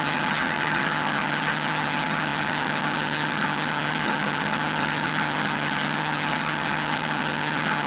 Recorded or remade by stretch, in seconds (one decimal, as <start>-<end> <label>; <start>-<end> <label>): 0.0-7.9 remade